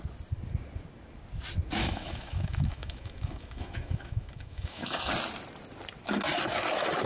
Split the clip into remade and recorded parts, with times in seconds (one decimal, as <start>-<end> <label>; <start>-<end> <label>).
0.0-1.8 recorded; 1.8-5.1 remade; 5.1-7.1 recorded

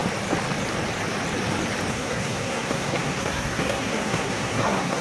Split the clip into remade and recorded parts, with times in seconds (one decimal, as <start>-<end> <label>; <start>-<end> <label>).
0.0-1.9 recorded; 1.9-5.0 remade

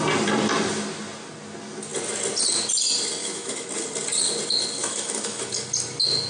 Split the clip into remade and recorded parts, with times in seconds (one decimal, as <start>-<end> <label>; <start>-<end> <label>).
0.0-3.2 recorded; 3.2-3.7 remade; 3.7-4.8 recorded; 4.8-5.4 remade; 5.4-6.3 recorded